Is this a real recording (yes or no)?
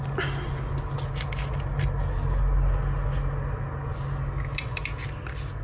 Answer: yes